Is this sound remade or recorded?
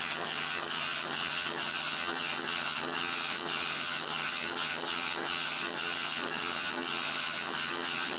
remade